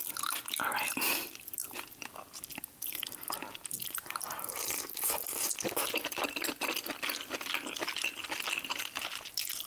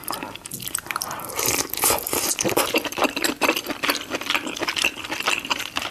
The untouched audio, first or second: first